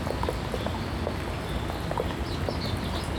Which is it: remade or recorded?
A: recorded